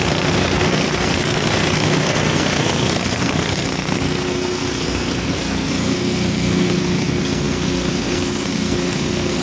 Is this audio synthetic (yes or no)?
yes